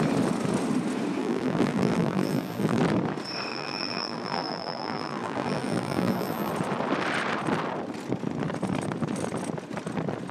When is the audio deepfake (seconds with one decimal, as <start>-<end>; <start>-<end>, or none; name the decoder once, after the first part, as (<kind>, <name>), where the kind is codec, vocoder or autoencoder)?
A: 1.2-2.8 (vocoder, BigVGAN v2); 3.5-6.5